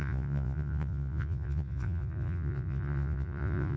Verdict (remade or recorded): remade